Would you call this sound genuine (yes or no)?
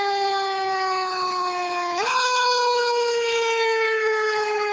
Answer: no